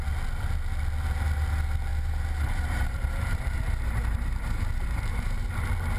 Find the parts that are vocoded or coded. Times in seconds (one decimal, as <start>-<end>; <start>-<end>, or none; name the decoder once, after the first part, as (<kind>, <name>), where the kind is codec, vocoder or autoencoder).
1.9-5.5 (vocoder, BigVGAN v2)